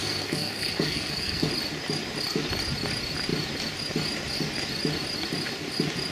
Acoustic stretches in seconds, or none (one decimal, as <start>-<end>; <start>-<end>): 1.5-6.1